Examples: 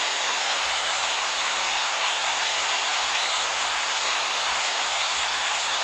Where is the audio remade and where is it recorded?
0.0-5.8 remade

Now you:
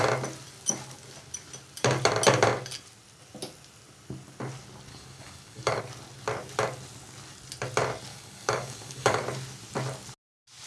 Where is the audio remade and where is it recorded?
0.0-4.9 recorded; 4.9-5.8 remade; 5.8-8.1 recorded; 8.1-9.2 remade; 9.2-10.7 recorded

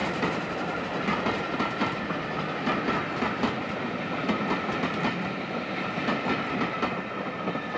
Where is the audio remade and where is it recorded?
0.0-1.2 remade; 1.2-7.8 recorded

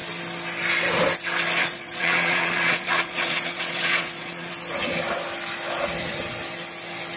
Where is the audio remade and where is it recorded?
0.0-1.6 recorded; 1.6-4.5 remade; 4.5-7.2 recorded

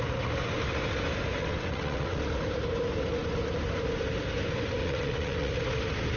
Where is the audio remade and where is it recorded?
0.0-1.4 recorded; 1.4-2.2 remade; 2.2-4.8 recorded; 4.8-5.5 remade; 5.5-6.2 recorded

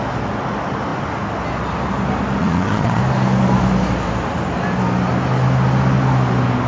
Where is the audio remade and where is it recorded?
0.0-2.4 recorded; 2.4-3.0 remade; 3.0-6.7 recorded

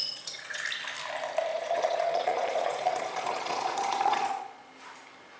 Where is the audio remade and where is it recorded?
0.0-0.6 remade; 0.6-1.5 recorded; 1.5-4.7 remade; 4.7-5.4 recorded

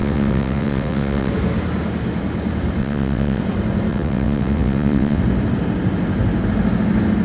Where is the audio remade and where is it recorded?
0.0-1.3 remade; 1.3-2.8 recorded; 2.8-3.4 remade; 3.4-3.9 recorded; 3.9-5.2 remade; 5.2-7.2 recorded